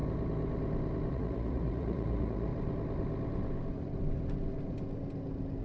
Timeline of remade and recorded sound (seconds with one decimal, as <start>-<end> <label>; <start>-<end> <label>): 0.0-1.1 recorded; 1.1-2.5 remade; 2.5-5.6 recorded